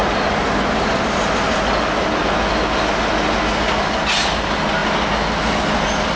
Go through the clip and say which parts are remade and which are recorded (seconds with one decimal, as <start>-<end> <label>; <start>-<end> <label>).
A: 0.0-6.2 recorded